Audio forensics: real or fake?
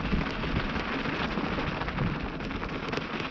real